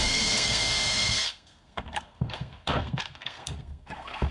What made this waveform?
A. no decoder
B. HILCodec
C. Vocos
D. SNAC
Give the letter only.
D